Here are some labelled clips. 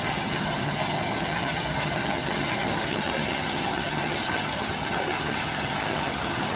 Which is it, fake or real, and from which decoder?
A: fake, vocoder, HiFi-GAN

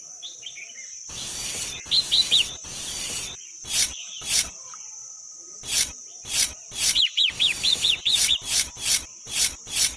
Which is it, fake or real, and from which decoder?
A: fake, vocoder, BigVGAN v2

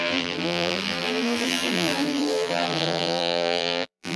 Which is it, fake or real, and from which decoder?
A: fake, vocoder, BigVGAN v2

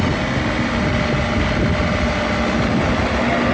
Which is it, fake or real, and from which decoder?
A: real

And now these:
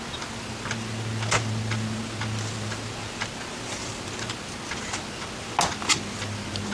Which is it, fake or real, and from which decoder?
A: real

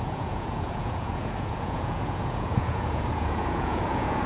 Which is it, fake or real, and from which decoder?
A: fake, vocoder, Vocos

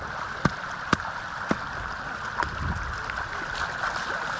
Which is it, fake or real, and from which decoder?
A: real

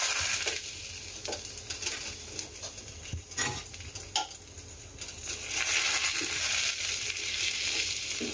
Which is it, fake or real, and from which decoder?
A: real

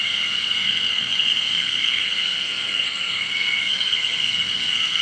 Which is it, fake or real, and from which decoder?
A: fake, codec, SNAC